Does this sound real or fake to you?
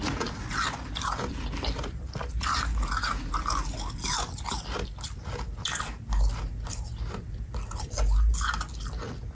real